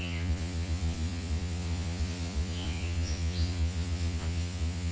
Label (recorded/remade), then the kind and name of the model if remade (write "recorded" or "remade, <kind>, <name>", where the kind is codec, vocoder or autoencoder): remade, vocoder, Vocos